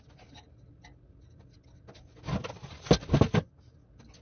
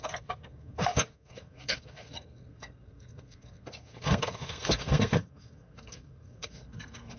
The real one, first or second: first